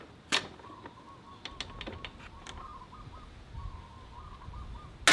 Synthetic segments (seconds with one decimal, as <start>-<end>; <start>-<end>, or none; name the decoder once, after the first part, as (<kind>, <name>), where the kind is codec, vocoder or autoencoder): none